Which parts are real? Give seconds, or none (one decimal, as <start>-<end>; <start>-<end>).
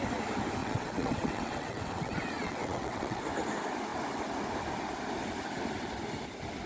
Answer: 0.0-0.6; 3.2-6.7